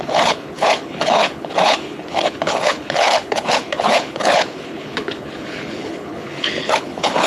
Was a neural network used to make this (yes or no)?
yes